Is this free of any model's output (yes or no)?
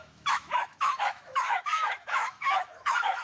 no